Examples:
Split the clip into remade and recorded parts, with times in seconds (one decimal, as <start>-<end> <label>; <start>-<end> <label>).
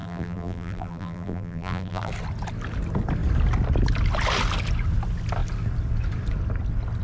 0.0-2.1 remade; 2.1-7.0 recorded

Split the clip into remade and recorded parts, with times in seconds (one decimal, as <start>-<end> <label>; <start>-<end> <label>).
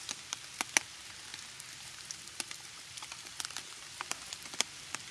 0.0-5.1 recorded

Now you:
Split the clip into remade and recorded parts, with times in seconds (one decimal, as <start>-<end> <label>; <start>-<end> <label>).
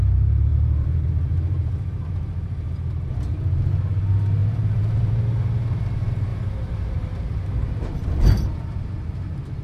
0.0-0.5 recorded; 0.5-3.8 remade; 3.8-4.4 recorded; 4.4-5.1 remade; 5.1-6.3 recorded; 6.3-8.8 remade; 8.8-9.6 recorded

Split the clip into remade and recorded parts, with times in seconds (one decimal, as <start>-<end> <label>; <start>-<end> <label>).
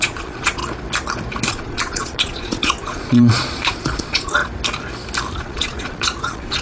0.0-0.6 remade; 0.6-1.5 recorded; 1.5-4.4 remade; 4.4-5.4 recorded; 5.4-6.6 remade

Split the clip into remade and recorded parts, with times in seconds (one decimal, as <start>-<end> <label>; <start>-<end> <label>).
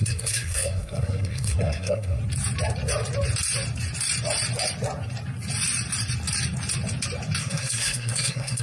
0.0-2.2 remade; 2.2-7.4 recorded; 7.4-8.6 remade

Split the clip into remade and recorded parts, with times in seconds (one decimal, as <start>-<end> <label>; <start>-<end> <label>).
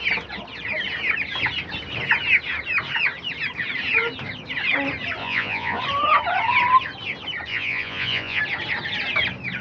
0.0-5.2 recorded; 5.2-5.8 remade; 5.8-7.5 recorded; 7.5-8.4 remade; 8.4-9.6 recorded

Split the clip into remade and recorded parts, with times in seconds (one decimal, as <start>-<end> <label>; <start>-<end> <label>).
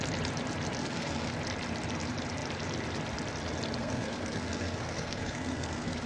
0.0-0.8 recorded; 0.8-1.3 remade; 1.3-3.8 recorded; 3.8-6.1 remade